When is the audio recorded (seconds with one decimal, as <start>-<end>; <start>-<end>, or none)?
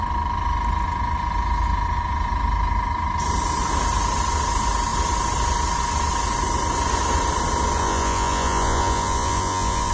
0.0-7.8